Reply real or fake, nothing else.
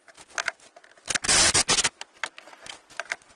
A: real